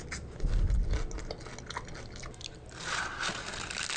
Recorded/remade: recorded